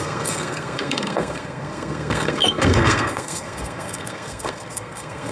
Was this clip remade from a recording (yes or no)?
yes